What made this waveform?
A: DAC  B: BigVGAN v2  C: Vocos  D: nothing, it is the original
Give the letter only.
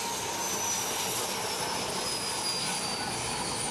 D